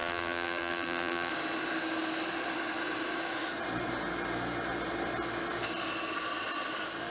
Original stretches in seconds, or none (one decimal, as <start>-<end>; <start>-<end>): 1.3-7.1